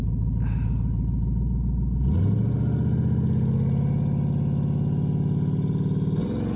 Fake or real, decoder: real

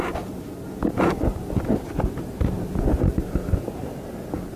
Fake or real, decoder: real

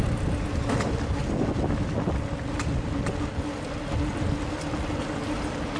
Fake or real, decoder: real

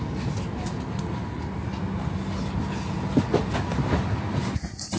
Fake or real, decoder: real